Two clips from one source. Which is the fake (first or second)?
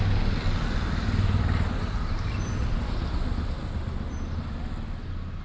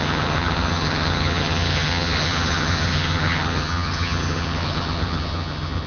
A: second